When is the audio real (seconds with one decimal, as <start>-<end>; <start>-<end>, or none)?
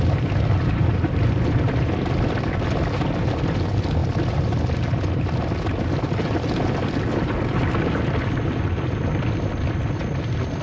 0.0-10.6